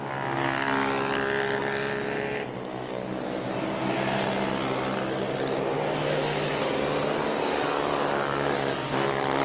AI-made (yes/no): no